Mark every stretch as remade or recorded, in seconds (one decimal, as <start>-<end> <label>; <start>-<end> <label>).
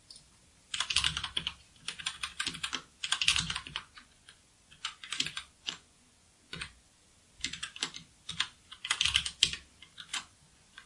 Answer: 0.0-3.3 recorded; 3.3-6.9 remade; 6.9-10.1 recorded; 10.1-10.9 remade